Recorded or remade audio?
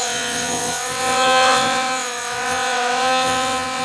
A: remade